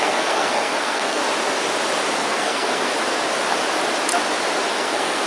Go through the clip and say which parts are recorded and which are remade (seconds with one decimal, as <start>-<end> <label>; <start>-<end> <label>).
0.0-1.2 remade; 1.2-2.1 recorded; 2.1-2.9 remade; 2.9-4.7 recorded; 4.7-5.3 remade